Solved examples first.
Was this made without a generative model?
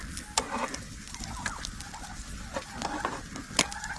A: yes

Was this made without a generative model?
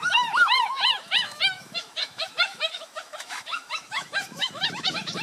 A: no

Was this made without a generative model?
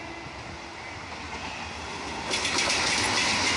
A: yes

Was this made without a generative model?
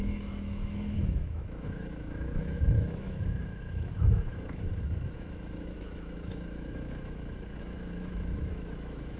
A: no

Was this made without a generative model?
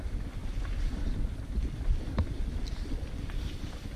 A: yes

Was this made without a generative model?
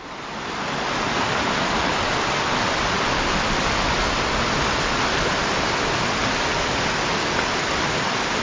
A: yes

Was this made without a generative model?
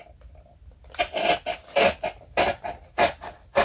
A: yes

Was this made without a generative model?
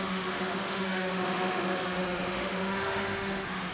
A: no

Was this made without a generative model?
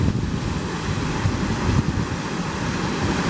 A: yes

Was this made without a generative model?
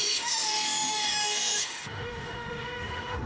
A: no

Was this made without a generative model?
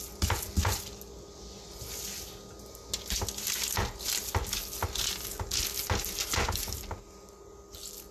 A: yes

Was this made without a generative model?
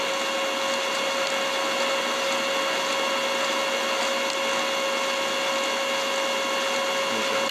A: yes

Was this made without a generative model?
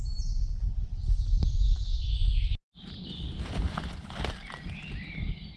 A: yes